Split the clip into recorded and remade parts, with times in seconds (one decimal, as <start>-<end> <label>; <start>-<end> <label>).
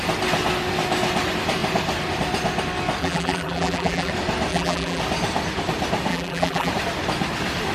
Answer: 0.0-3.0 recorded; 3.0-4.1 remade; 4.1-4.5 recorded; 4.5-5.0 remade; 5.0-6.1 recorded; 6.1-6.7 remade; 6.7-7.7 recorded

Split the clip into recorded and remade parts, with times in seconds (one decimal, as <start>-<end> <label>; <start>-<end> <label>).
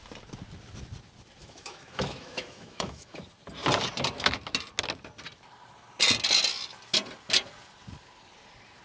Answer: 0.0-1.4 recorded; 1.4-3.2 remade; 3.2-8.8 recorded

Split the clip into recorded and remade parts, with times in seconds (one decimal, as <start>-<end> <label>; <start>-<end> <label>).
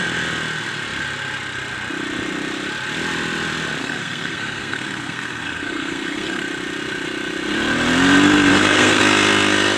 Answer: 0.0-3.8 recorded; 3.8-6.4 remade; 6.4-8.5 recorded; 8.5-9.0 remade; 9.0-9.8 recorded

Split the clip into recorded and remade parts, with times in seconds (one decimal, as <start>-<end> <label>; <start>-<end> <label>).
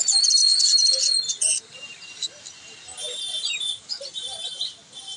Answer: 0.0-0.4 remade; 0.4-3.4 recorded; 3.4-5.2 remade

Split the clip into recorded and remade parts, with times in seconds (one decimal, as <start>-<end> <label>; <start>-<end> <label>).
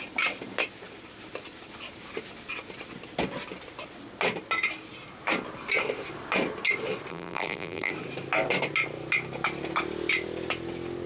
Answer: 0.0-7.1 recorded; 7.1-7.9 remade; 7.9-11.1 recorded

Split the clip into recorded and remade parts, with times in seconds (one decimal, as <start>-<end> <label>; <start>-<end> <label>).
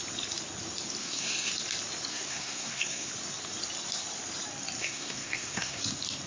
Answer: 0.0-1.0 recorded; 1.0-1.5 remade; 1.5-2.1 recorded; 2.1-3.1 remade; 3.1-4.8 recorded; 4.8-5.8 remade; 5.8-6.3 recorded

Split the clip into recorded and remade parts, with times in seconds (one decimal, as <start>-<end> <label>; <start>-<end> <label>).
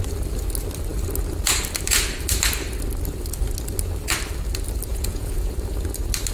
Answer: 0.0-4.9 recorded; 4.9-5.5 remade; 5.5-6.3 recorded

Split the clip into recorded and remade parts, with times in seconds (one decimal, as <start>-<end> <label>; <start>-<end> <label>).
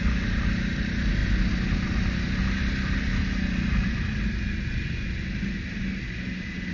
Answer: 0.0-6.7 recorded